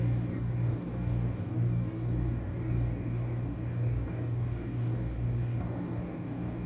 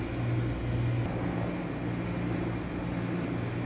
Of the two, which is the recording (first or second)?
second